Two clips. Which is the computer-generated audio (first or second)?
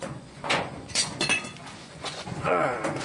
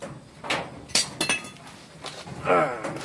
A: first